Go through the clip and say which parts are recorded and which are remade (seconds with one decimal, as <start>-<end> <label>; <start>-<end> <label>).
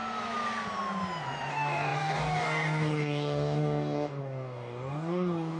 0.0-1.5 recorded; 1.5-5.6 remade